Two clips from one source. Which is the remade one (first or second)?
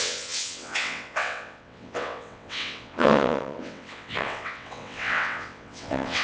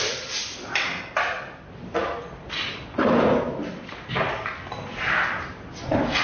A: first